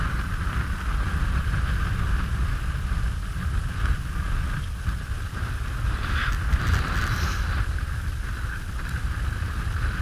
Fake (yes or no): no